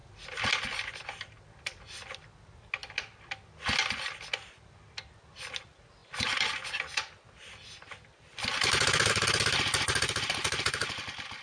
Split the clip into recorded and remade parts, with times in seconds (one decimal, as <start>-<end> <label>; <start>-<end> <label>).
0.0-11.4 recorded